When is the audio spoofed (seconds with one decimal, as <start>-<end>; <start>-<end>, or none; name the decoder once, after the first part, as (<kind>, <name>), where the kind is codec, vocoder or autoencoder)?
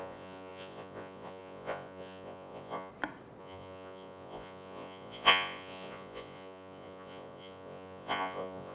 0.0-2.9 (vocoder, Vocos); 3.4-8.7